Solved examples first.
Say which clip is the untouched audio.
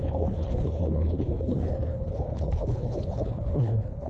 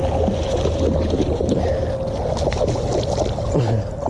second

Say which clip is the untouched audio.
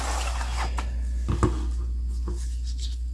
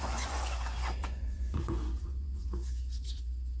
first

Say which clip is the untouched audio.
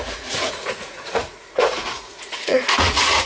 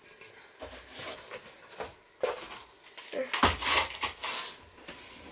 second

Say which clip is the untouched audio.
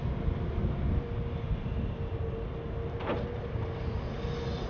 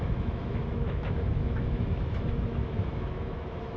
first